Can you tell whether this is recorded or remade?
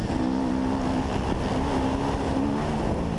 recorded